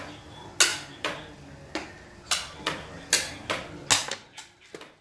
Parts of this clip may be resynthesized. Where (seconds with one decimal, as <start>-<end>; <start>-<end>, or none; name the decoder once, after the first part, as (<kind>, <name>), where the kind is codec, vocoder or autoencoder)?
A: none